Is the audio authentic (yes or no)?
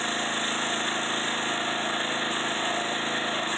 yes